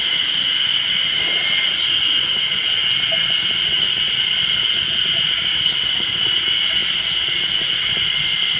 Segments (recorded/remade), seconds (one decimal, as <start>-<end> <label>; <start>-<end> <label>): 0.0-8.6 recorded